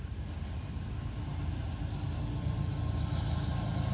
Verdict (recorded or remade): recorded